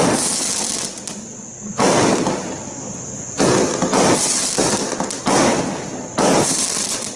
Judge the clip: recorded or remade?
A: recorded